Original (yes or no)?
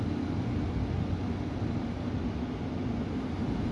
yes